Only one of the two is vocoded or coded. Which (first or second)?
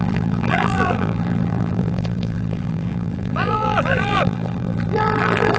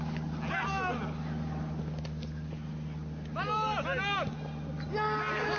first